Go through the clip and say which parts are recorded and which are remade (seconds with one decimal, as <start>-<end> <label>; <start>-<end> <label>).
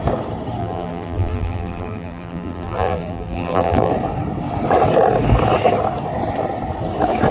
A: 0.0-0.6 recorded; 0.6-3.9 remade; 3.9-7.3 recorded